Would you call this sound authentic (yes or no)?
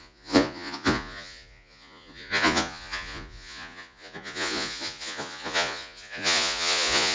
no